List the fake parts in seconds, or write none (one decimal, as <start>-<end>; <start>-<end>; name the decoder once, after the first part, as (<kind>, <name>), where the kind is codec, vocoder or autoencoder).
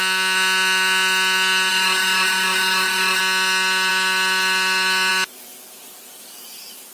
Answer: 1.7-3.2 (autoencoder, DAC-VAE)